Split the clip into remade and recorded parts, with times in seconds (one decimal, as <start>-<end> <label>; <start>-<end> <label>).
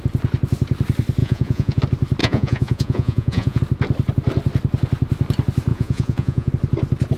0.0-1.2 recorded; 1.2-1.8 remade; 1.8-2.2 recorded; 2.2-3.6 remade; 3.6-5.7 recorded; 5.7-6.5 remade; 6.5-7.2 recorded